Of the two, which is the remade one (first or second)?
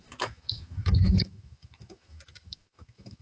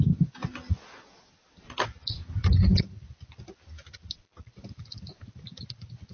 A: first